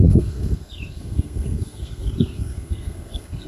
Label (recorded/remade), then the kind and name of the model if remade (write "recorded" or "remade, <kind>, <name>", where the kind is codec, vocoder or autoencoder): remade, codec, SNAC